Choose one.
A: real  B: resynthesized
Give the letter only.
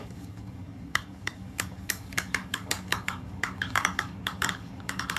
B